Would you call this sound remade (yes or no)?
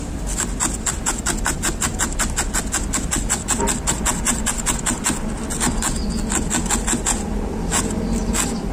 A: no